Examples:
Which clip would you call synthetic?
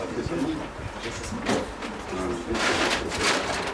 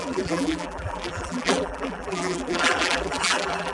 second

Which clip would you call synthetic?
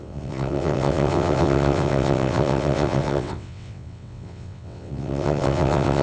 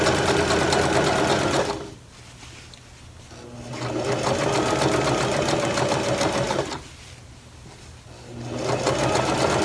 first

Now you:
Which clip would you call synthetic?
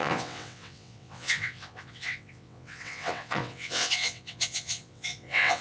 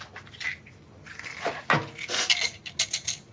first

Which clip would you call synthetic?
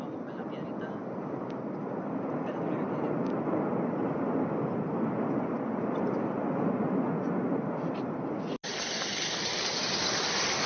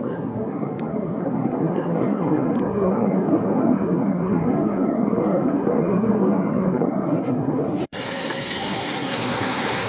second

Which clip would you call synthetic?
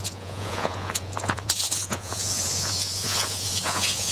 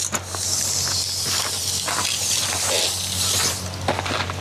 first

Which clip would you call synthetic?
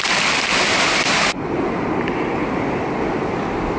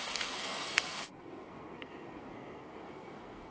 second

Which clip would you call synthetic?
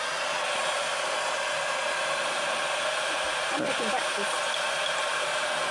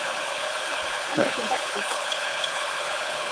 second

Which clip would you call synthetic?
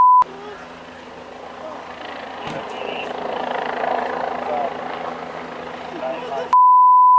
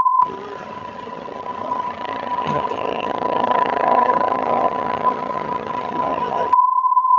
second